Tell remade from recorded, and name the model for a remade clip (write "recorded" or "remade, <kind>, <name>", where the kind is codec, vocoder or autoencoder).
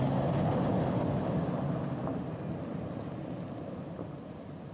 recorded